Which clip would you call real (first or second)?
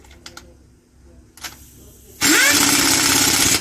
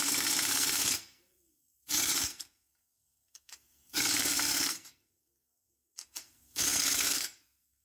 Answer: first